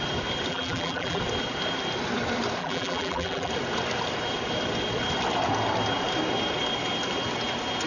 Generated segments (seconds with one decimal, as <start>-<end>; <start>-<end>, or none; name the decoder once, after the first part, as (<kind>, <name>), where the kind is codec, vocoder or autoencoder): 0.5-1.2 (vocoder, BigVGAN v2); 2.6-3.5